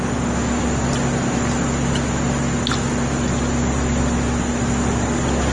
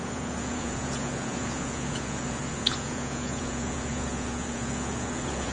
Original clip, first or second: first